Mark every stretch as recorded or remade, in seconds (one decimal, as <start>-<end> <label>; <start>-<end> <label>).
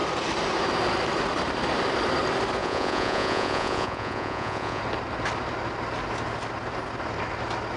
0.0-2.6 recorded; 2.6-4.8 remade; 4.8-7.8 recorded